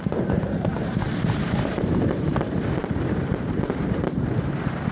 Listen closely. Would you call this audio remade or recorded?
remade